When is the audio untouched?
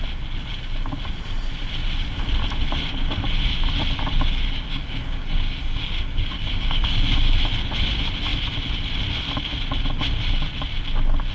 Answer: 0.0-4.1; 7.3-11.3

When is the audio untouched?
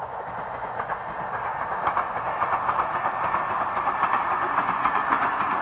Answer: 0.9-4.3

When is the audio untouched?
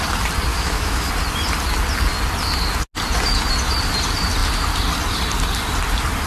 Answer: 0.0-0.5; 1.1-6.3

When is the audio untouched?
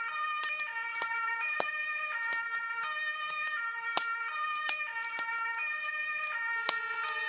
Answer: 0.0-0.9; 1.6-7.3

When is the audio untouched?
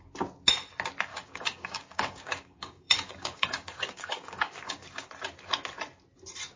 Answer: 0.0-1.1; 5.1-6.6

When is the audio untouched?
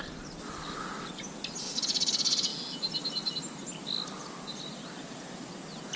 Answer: 0.0-3.8; 5.5-6.0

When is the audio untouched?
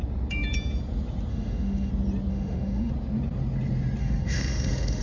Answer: 0.0-1.3; 1.9-2.3; 2.9-4.0